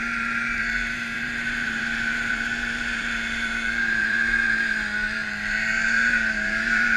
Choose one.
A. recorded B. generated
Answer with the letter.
B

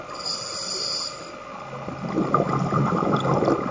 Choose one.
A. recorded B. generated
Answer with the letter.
A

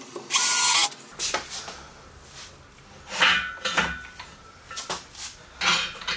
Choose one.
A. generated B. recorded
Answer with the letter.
B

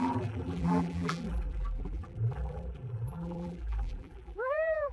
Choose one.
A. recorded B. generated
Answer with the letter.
B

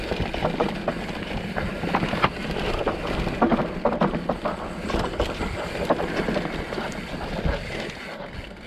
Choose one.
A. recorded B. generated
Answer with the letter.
A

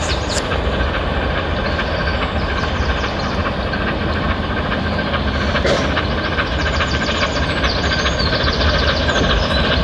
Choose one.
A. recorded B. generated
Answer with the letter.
B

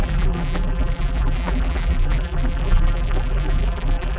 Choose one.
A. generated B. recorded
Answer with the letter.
A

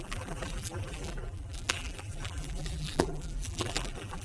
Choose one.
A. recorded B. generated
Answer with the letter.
B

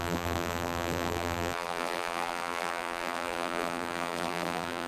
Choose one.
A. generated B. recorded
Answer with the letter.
A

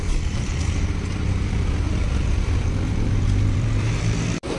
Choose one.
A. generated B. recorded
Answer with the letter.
A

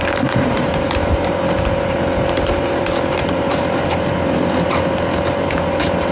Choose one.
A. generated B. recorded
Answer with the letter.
A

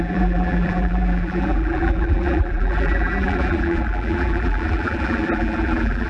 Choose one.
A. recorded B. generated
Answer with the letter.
B